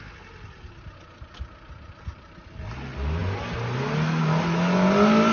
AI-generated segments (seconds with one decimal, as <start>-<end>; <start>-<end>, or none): none